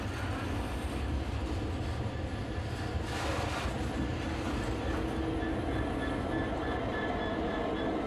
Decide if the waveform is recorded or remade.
recorded